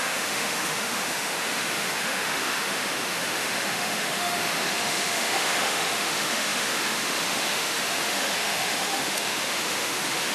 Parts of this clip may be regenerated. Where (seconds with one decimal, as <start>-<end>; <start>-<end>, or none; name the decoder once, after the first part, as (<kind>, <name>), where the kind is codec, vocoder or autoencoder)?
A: 0.0-10.3 (autoencoder, DAC-VAE)